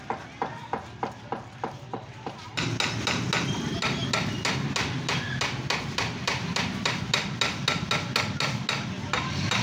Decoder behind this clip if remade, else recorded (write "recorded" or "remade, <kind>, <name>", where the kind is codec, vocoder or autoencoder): recorded